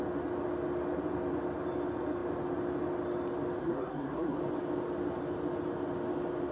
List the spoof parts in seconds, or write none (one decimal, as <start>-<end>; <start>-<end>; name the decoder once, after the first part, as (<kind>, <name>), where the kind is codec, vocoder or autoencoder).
3.6-4.4 (codec, SNAC)